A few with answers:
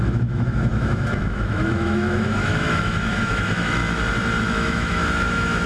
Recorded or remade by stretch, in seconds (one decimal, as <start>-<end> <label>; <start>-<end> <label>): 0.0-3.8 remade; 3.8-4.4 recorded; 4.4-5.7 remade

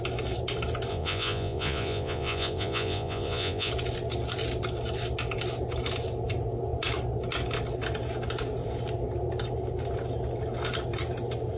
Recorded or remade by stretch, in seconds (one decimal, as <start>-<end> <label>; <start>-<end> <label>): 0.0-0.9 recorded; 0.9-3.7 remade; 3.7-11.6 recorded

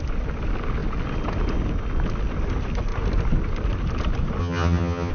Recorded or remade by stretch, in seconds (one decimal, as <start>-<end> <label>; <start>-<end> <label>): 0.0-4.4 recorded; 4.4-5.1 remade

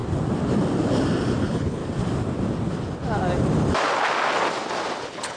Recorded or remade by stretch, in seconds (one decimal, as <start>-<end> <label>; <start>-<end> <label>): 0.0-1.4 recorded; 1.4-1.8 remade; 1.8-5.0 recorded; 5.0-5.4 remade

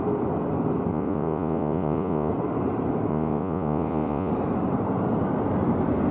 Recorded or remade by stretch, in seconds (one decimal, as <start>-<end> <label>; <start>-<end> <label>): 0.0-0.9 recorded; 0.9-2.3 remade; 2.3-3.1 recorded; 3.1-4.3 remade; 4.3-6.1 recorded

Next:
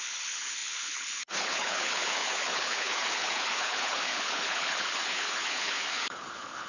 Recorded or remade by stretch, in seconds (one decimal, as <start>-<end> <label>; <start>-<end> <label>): 0.0-6.7 remade

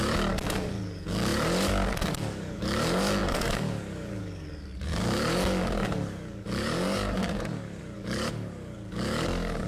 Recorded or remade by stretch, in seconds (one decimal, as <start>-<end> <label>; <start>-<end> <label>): 0.0-9.7 remade

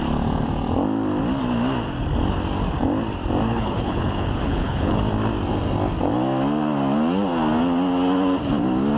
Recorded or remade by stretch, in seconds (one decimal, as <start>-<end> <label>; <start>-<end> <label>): 0.0-3.5 recorded; 3.5-5.0 remade; 5.0-9.0 recorded